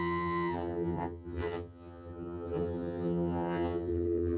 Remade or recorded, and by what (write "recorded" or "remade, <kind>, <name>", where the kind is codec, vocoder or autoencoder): remade, vocoder, HiFi-GAN